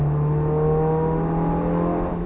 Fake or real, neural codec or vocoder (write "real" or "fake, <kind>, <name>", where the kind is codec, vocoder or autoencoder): real